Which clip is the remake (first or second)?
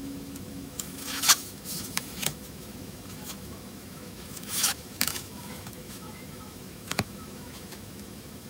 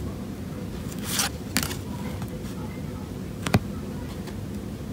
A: first